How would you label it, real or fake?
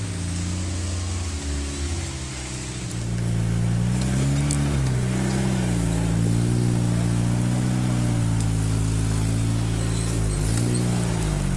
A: real